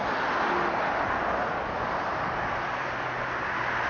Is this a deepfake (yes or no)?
no